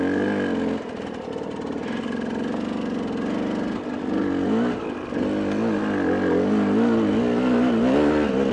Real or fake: real